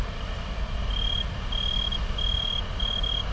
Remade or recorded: recorded